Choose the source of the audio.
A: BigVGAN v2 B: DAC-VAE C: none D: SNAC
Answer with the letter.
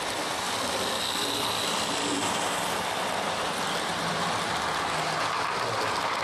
C